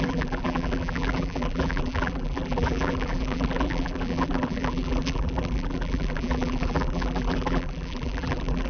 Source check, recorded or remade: remade